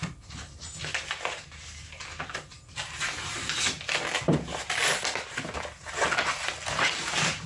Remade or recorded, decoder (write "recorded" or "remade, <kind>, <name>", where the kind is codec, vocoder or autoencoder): recorded